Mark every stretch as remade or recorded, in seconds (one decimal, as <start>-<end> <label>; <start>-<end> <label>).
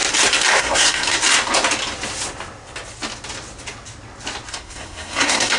0.0-0.6 recorded; 0.6-1.2 remade; 1.2-4.5 recorded; 4.5-5.6 remade